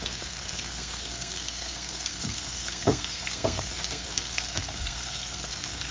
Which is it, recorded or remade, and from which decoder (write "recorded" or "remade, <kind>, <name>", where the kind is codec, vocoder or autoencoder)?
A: remade, codec, SNAC